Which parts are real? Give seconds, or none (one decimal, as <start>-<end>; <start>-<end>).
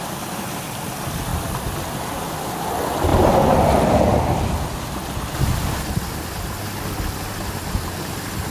0.0-8.5